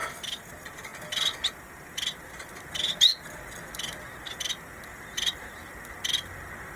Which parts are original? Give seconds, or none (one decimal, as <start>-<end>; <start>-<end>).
0.5-4.9; 5.7-6.8